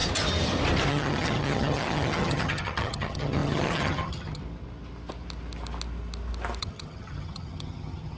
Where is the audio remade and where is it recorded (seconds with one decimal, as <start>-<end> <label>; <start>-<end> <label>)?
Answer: 0.0-0.9 recorded; 0.9-4.4 remade; 4.4-6.6 recorded; 6.6-8.2 remade